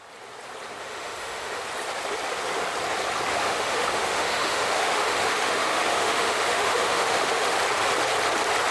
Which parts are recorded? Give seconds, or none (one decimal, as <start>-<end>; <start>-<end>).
0.0-0.8; 1.6-3.3; 7.6-8.7